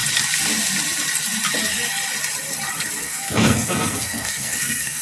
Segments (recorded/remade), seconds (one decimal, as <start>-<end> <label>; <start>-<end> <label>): 0.0-3.0 recorded; 3.0-5.0 remade